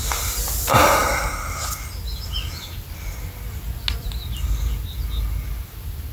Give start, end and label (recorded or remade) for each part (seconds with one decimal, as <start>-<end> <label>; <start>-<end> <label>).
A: 0.0-6.1 recorded